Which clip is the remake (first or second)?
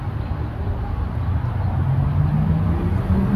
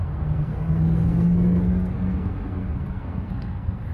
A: second